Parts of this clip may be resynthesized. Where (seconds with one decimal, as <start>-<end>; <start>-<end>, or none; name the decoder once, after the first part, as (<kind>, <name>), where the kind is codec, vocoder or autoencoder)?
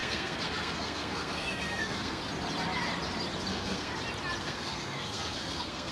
0.0-2.2 (codec, SNAC); 3.5-3.9; 4.4-5.9